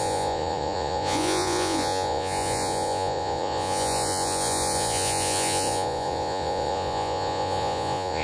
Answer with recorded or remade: remade